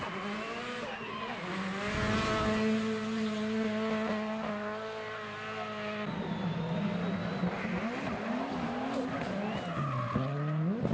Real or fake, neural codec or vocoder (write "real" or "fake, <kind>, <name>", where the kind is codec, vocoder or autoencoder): real